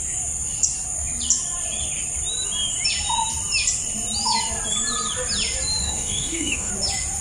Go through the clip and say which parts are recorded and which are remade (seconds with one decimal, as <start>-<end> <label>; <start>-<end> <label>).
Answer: 0.0-5.8 recorded; 5.8-6.7 remade; 6.7-7.2 recorded